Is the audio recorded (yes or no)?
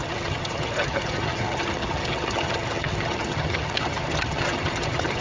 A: no